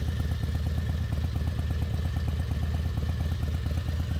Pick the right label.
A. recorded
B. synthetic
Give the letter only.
A